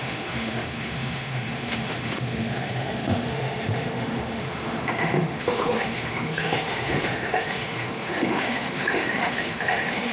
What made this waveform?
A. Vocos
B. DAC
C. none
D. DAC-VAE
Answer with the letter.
D